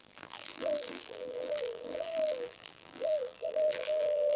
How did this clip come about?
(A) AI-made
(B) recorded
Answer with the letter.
A